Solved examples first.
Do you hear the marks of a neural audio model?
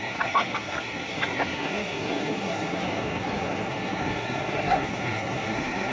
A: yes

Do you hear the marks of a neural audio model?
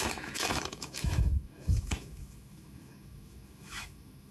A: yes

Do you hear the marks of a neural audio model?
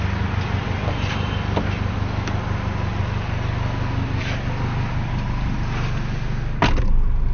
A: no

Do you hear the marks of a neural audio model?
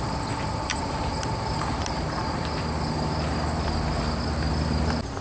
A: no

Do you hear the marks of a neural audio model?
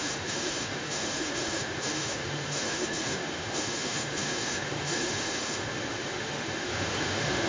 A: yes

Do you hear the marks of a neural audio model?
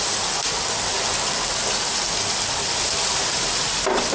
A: no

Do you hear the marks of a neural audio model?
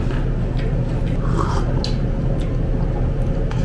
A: no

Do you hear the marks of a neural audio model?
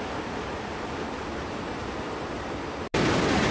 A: no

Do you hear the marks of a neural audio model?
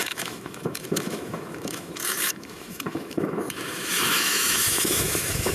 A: yes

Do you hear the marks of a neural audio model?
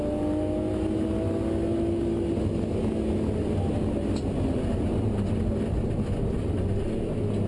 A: no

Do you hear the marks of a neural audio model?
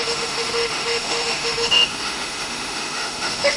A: yes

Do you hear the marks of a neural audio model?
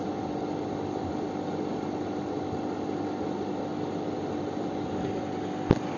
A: no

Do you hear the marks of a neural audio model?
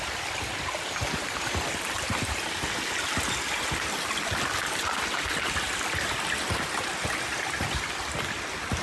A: no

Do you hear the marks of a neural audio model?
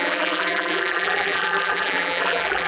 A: yes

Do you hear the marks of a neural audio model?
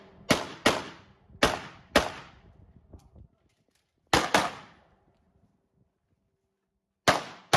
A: no